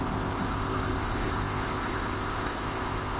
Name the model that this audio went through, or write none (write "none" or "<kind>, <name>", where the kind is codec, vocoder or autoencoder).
codec, ZipCodec